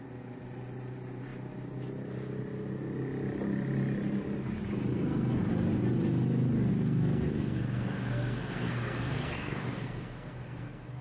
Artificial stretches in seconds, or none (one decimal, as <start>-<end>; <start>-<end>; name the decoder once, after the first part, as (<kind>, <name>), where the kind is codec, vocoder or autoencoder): 4.9-5.5 (codec, SNAC); 6.7-11.0